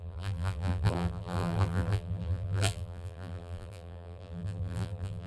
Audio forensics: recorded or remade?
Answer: remade